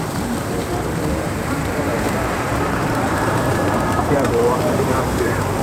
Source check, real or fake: fake